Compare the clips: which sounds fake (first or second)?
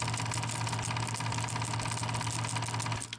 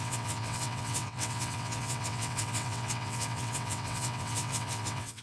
second